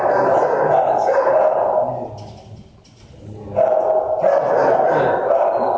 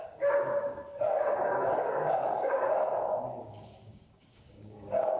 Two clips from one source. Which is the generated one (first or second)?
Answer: second